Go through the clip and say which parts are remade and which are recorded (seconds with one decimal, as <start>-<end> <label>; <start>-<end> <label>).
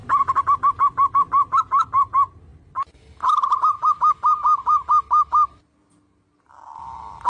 0.0-7.3 recorded